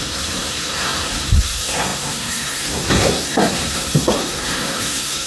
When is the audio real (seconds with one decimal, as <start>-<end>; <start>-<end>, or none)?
none